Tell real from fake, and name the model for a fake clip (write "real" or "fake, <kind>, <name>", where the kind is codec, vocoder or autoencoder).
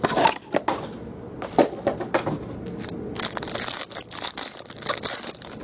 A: real